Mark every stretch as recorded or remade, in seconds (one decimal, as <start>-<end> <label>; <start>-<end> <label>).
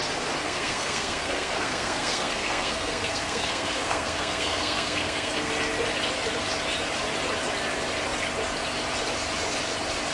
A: 0.0-0.4 recorded; 0.4-5.5 remade; 5.5-10.1 recorded